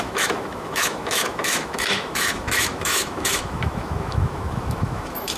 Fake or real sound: fake